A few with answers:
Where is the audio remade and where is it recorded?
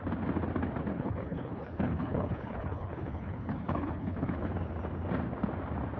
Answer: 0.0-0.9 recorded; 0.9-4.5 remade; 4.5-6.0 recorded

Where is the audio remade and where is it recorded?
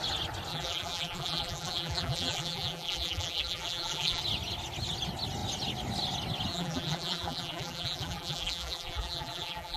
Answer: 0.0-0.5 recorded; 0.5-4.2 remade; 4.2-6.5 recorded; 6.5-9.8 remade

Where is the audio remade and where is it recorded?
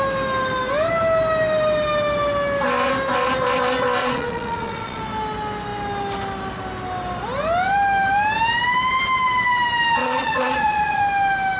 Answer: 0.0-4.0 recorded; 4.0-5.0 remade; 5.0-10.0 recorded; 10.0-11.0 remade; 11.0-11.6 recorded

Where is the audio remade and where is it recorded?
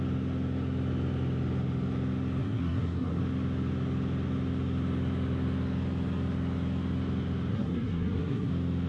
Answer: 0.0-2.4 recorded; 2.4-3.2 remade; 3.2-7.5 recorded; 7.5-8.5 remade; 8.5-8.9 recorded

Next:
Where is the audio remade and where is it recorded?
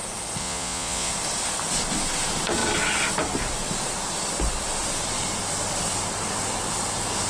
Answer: 0.0-0.4 recorded; 0.4-1.1 remade; 1.1-7.3 recorded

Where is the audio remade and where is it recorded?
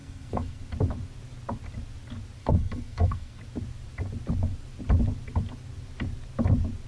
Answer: 0.0-0.6 remade; 0.6-2.4 recorded; 2.4-3.4 remade; 3.4-6.9 recorded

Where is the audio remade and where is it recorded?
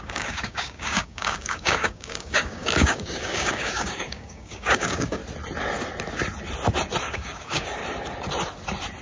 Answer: 0.0-5.2 remade; 5.2-7.0 recorded; 7.0-7.8 remade; 7.8-9.0 recorded